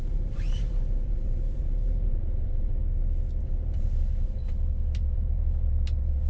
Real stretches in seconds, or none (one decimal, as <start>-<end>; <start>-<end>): 2.8-3.4